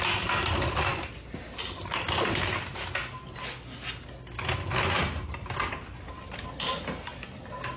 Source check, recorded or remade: recorded